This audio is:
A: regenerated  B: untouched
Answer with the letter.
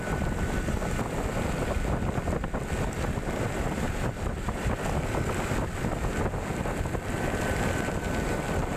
B